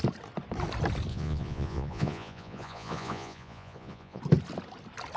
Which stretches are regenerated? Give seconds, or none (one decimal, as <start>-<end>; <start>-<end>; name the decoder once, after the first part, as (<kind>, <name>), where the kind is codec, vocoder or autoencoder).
1.1-4.2 (vocoder, Vocos)